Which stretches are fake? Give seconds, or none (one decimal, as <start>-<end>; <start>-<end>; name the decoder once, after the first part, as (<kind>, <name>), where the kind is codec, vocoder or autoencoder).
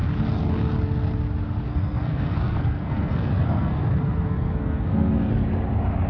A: 1.7-5.3 (codec, SNAC)